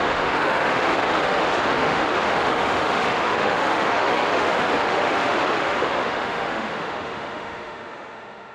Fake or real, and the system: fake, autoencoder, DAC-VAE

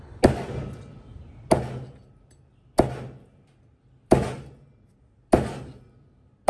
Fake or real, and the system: real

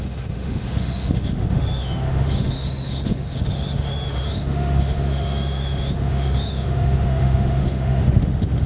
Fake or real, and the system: fake, autoencoder, DAC-VAE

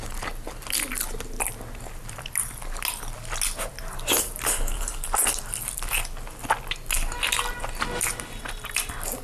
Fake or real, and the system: real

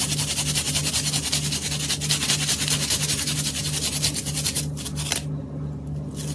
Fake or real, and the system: real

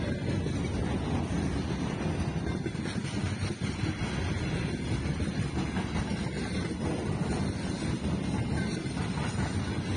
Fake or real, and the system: real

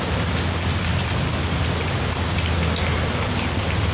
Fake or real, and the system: real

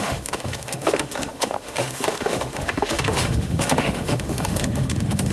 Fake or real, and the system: fake, autoencoder, DAC-VAE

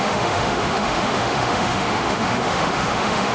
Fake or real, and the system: fake, autoencoder, DAC-VAE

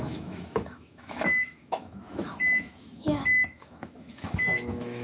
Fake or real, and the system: fake, autoencoder, DAC-VAE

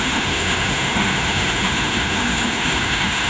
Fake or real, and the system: fake, autoencoder, DAC-VAE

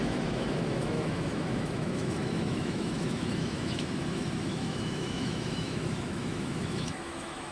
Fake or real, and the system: fake, autoencoder, DAC-VAE